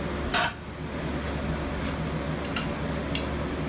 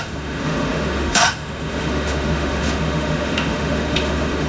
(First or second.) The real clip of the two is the first